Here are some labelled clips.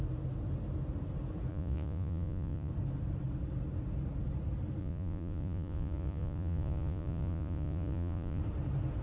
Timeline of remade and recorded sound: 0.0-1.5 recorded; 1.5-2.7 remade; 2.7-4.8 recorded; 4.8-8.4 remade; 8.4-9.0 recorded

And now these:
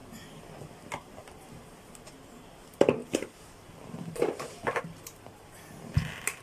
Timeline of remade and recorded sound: 0.0-3.0 recorded; 3.0-4.8 remade; 4.8-6.4 recorded

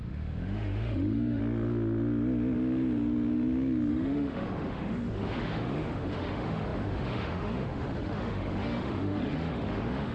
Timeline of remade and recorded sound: 0.0-1.4 remade; 1.4-3.9 recorded; 3.9-10.1 remade

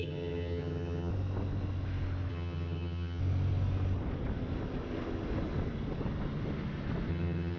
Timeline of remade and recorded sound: 0.0-1.1 remade; 1.1-2.3 recorded; 2.3-3.2 remade; 3.2-7.1 recorded; 7.1-7.6 remade